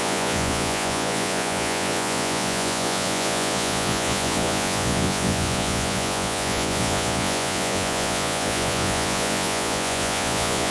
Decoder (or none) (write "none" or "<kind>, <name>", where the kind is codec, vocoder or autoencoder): vocoder, Vocos